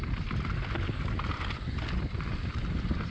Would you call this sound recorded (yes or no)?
yes